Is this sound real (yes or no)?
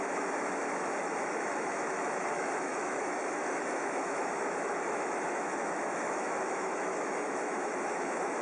no